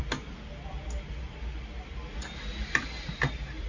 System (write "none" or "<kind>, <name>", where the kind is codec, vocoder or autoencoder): none